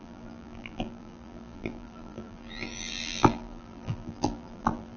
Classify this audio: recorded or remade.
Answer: remade